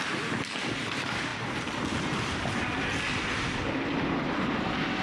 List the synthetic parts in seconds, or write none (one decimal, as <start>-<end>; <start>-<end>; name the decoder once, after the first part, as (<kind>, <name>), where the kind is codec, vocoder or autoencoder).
none